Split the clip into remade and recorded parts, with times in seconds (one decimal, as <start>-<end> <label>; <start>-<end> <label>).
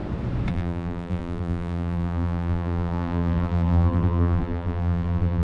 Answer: 0.0-0.5 recorded; 0.5-5.4 remade